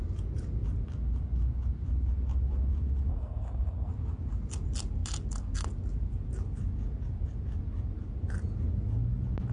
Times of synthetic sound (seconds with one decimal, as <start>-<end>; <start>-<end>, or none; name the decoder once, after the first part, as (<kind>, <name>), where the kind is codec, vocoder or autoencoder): 3.1-3.9 (codec, SNAC)